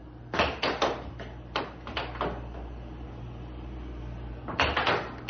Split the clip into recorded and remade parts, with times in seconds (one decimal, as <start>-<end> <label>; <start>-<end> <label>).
0.0-5.3 recorded